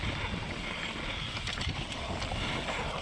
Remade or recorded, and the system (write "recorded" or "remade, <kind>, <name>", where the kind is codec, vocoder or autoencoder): recorded